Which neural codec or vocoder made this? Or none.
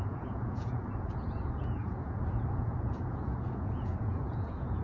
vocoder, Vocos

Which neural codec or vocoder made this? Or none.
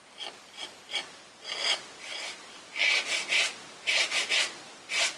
none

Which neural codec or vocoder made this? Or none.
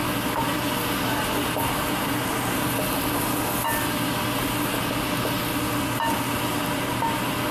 none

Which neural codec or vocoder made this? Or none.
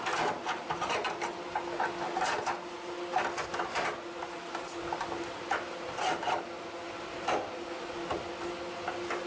none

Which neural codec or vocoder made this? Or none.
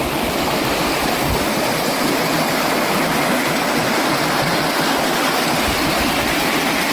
none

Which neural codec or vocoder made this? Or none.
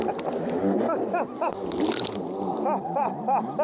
none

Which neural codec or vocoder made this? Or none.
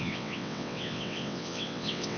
vocoder, WaveNeXt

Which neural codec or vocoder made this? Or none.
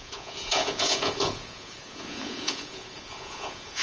vocoder, Vocos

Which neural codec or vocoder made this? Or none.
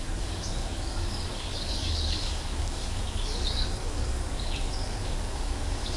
codec, DAC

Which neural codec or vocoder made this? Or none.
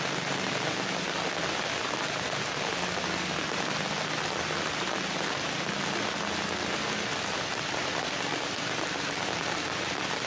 none